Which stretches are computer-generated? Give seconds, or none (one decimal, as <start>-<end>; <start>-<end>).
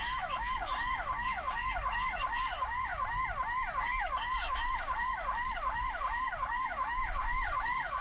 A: 0.0-2.9; 3.8-8.0